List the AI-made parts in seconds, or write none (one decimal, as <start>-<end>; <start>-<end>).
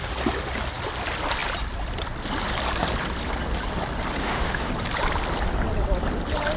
4.2-4.7